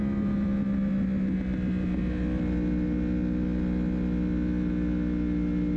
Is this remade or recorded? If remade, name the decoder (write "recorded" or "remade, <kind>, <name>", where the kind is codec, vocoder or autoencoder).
recorded